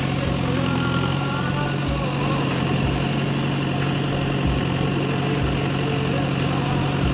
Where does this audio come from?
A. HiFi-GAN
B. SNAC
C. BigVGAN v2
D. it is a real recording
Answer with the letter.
D